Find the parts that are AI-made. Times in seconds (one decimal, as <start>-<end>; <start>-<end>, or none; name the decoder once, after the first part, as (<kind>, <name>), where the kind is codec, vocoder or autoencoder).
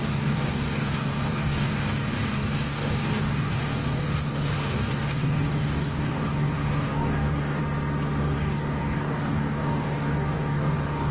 0.0-7.6 (codec, DAC); 8.2-11.1